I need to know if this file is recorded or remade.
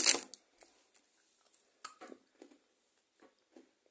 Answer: recorded